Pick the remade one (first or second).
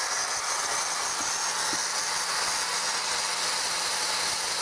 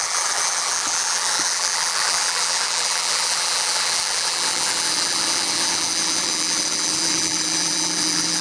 second